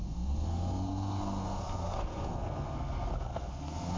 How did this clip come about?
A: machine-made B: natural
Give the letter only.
A